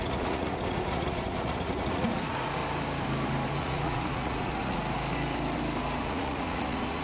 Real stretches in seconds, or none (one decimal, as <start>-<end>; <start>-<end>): 2.6-3.6; 4.8-6.0